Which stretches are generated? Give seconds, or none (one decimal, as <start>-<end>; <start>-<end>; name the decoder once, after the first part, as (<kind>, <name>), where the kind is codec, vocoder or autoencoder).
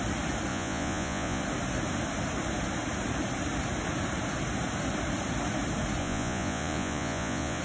0.5-1.4 (vocoder, Vocos); 6.0-7.6